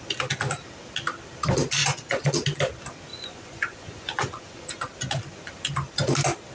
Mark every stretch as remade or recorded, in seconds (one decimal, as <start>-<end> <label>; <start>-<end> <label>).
0.0-1.8 recorded; 1.8-2.3 remade; 2.3-3.1 recorded; 3.1-4.9 remade; 4.9-6.5 recorded